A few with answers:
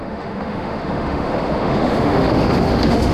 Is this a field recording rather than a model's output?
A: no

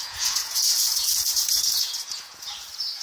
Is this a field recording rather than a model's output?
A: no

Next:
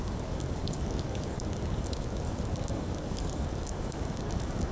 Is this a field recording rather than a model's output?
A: no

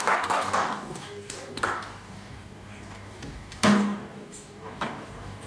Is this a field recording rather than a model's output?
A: no